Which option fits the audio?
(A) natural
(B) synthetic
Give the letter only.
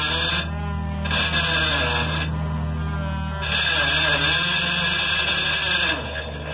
A